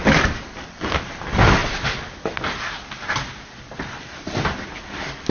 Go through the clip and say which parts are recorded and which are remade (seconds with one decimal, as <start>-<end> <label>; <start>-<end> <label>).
0.0-1.6 remade; 1.6-4.8 recorded; 4.8-5.3 remade